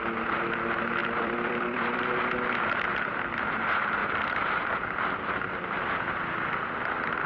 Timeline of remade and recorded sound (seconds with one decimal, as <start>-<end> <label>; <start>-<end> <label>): 0.0-1.0 recorded; 1.0-2.1 remade; 2.1-2.9 recorded; 2.9-3.5 remade; 3.5-4.0 recorded; 4.0-4.7 remade; 4.7-7.3 recorded